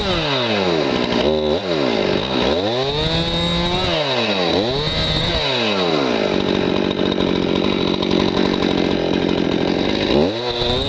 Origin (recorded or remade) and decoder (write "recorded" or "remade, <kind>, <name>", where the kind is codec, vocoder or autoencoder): recorded